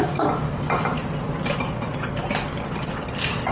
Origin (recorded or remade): recorded